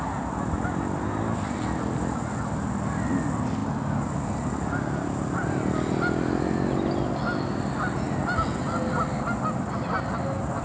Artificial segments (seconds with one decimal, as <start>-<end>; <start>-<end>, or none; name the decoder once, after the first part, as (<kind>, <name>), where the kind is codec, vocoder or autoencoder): none